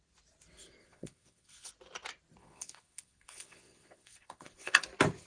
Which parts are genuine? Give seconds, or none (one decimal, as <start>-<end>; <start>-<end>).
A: 0.0-0.8; 1.7-2.4; 4.8-5.3